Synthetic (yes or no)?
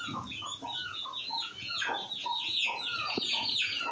yes